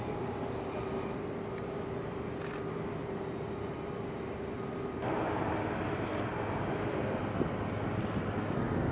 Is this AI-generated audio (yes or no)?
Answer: no